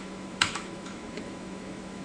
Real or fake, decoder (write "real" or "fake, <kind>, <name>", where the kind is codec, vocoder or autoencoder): fake, autoencoder, DAC-VAE